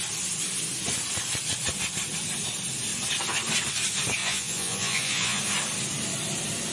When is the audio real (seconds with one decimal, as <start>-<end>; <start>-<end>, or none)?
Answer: 0.0-4.2; 5.4-6.7